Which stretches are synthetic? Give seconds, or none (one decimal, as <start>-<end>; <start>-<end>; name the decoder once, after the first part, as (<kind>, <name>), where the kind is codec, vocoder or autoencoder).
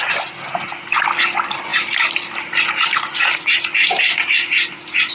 1.7-5.1 (vocoder, BigVGAN v2)